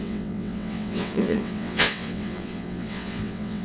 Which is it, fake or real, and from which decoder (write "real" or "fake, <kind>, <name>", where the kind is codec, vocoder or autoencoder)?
fake, vocoder, WaveNeXt